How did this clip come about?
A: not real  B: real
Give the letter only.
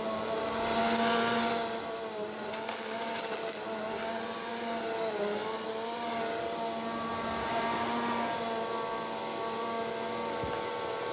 B